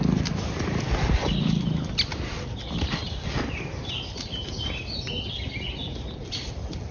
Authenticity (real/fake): real